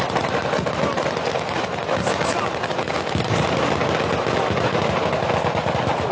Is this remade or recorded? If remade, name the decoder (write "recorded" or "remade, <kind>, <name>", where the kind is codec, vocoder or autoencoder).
recorded